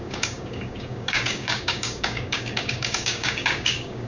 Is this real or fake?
fake